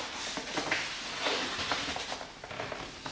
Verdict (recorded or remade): recorded